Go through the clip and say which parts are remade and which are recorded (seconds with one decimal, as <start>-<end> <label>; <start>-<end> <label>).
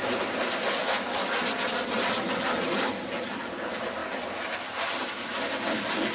0.0-0.8 recorded; 0.8-1.4 remade; 1.4-6.1 recorded